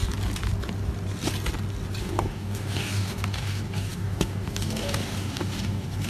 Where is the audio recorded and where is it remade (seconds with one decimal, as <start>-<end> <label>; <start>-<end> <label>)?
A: 0.0-2.0 recorded; 2.0-6.1 remade